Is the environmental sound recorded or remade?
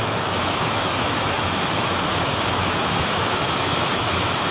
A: remade